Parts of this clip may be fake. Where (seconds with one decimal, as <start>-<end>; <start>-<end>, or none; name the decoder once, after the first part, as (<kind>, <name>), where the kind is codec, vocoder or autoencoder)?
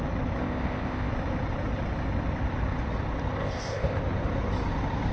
0.4-1.1 (codec, ZipCodec); 3.4-4.0